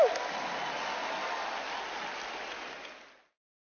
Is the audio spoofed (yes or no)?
no